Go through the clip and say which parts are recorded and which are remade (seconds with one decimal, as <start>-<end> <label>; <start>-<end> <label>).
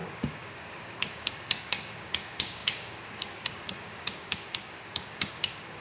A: 0.0-5.8 remade